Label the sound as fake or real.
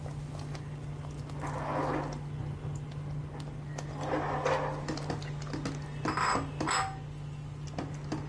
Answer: real